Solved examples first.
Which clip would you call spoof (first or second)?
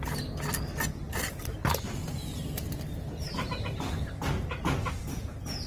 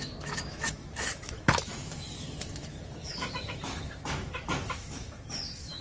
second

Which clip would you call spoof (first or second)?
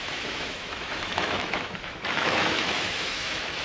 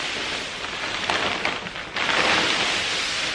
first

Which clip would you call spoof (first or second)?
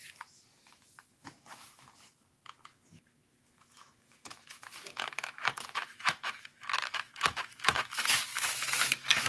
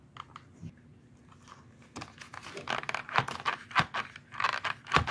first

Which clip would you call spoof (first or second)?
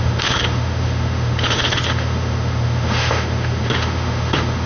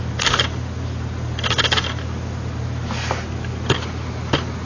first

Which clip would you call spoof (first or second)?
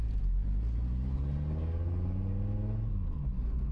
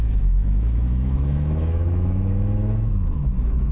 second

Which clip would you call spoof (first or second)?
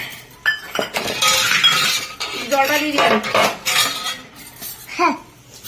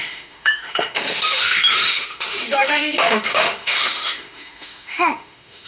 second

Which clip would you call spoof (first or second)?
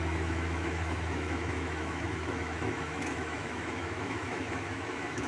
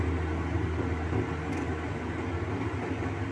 first